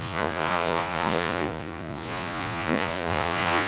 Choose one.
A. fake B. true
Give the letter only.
A